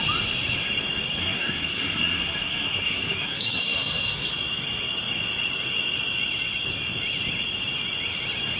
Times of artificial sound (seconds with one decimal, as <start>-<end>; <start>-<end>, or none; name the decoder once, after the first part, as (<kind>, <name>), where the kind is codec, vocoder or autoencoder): 1.2-4.3 (codec, SNAC)